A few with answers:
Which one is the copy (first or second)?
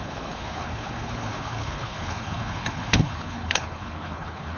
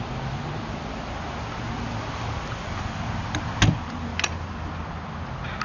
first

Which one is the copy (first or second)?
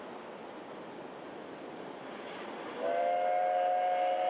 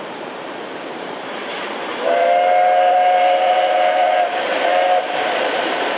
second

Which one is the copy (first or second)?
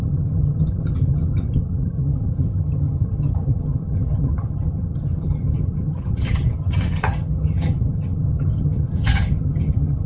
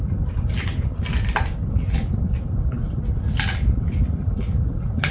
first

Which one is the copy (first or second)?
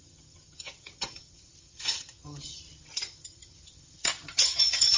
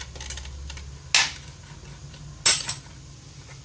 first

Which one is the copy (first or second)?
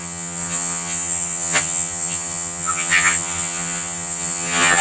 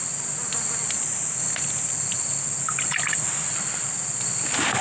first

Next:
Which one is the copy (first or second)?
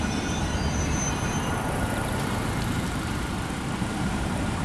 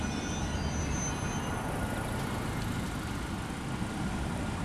first